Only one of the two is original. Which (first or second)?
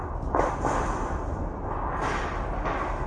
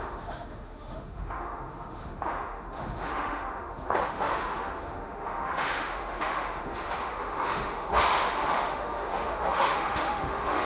first